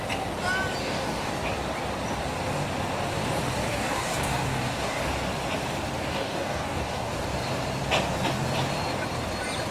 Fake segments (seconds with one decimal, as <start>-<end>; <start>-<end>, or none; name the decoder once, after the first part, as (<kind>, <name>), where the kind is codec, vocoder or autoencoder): 0.8-1.3 (codec, DAC); 3.7-5.0; 6.1-7.1